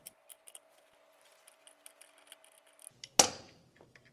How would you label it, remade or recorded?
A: recorded